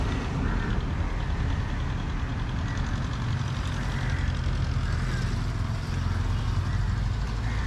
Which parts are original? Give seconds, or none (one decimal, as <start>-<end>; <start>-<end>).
0.0-7.7